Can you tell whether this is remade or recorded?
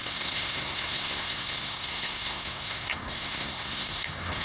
remade